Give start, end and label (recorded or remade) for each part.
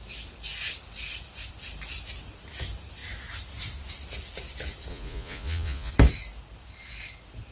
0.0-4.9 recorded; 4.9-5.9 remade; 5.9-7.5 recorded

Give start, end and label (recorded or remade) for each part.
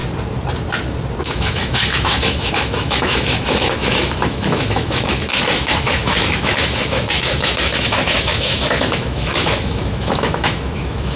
0.0-1.2 recorded; 1.2-11.2 remade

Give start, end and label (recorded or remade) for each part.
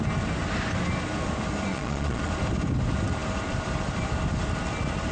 0.0-1.7 recorded; 1.7-2.3 remade; 2.3-5.1 recorded